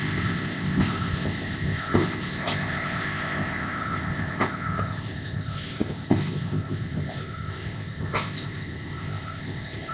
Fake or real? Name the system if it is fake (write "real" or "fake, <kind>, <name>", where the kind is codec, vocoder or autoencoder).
fake, codec, ZipCodec